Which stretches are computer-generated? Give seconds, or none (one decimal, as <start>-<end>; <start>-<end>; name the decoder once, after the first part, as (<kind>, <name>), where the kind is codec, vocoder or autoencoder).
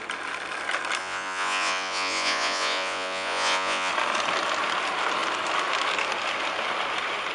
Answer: 1.0-3.9 (vocoder, Vocos)